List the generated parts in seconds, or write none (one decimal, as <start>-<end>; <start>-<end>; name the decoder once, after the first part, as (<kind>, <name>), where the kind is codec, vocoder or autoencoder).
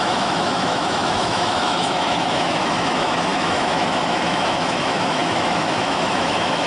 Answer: 0.0-6.7 (autoencoder, DAC-VAE)